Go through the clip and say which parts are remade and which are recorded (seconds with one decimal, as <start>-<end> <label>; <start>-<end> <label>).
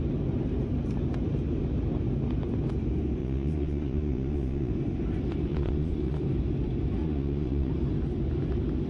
0.0-3.2 recorded; 3.2-4.7 remade; 4.7-5.5 recorded; 5.5-6.2 remade; 6.2-7.0 recorded; 7.0-7.7 remade; 7.7-8.9 recorded